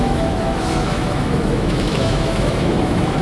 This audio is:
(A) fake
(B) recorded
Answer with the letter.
A